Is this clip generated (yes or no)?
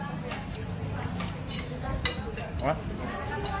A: no